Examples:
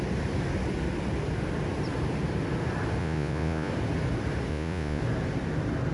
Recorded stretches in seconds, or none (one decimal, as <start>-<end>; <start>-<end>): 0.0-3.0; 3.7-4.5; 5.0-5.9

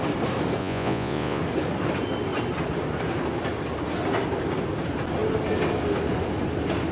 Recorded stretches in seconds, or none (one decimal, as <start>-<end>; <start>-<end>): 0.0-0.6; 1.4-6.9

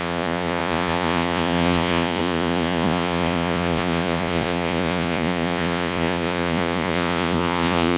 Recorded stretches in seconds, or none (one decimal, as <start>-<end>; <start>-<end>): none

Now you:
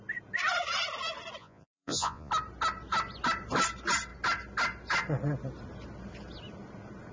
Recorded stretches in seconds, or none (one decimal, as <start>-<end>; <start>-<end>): 0.0-1.4; 2.3-7.1